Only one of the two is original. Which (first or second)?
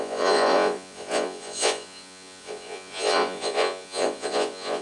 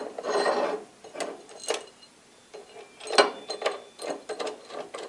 second